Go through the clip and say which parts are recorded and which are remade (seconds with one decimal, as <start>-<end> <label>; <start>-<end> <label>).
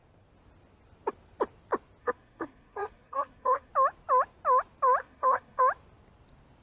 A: 0.0-2.0 recorded; 2.0-3.7 remade; 3.7-5.0 recorded; 5.0-5.6 remade; 5.6-6.6 recorded